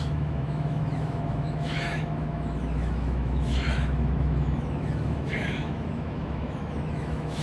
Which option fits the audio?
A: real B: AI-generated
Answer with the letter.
B